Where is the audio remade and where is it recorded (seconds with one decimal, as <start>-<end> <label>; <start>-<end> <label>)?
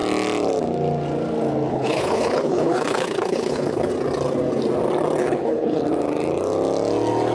0.0-1.7 recorded; 1.7-3.9 remade; 3.9-5.2 recorded; 5.2-5.8 remade; 5.8-7.3 recorded